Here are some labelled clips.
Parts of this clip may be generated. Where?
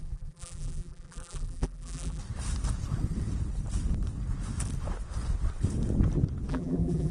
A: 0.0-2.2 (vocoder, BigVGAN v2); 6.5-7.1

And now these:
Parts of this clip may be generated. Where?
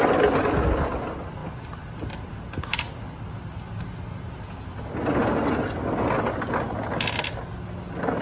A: none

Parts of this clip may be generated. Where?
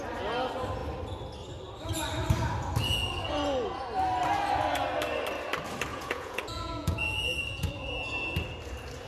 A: 5.9-7.7 (vocoder, Vocos)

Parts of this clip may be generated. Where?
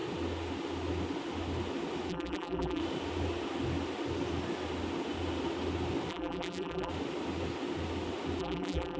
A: 2.1-2.8 (vocoder, BigVGAN v2); 6.1-6.9; 8.4-9.0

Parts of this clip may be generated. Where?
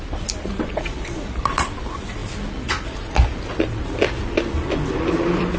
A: none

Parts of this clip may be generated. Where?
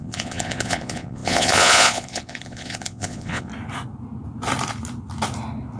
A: 0.0-3.5 (vocoder, Vocos)